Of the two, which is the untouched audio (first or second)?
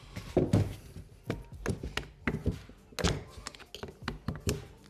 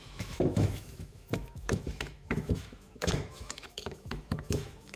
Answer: first